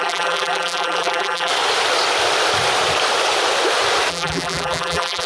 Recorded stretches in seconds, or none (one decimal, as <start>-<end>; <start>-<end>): 1.5-4.1